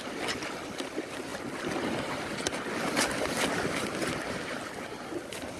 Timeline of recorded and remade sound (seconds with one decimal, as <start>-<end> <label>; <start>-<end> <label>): 0.0-5.6 recorded